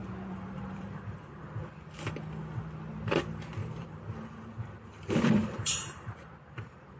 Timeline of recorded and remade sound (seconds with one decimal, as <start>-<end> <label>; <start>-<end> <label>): 0.0-1.4 remade; 1.4-3.6 recorded; 3.6-7.0 remade